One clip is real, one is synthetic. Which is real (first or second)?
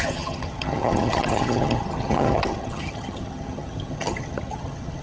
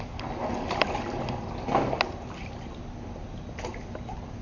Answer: second